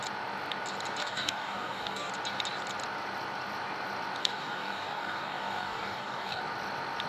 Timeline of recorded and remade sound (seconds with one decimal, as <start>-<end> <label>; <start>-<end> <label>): 0.0-1.0 recorded; 1.0-2.1 remade; 2.1-4.2 recorded; 4.2-6.4 remade; 6.4-7.1 recorded